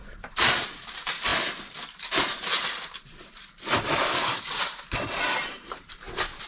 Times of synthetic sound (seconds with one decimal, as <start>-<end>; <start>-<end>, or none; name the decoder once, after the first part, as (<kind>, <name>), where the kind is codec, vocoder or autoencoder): 0.0-6.5 (vocoder, BigVGAN v2)